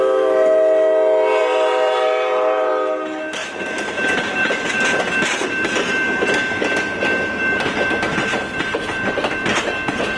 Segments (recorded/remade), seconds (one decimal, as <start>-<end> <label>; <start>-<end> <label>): 0.0-1.4 recorded; 1.4-2.7 remade; 2.7-10.2 recorded